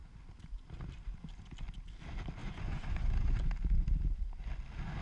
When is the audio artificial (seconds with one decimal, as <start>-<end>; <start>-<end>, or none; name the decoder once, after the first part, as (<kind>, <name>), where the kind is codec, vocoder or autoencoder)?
2.4-3.5 (vocoder, Vocos)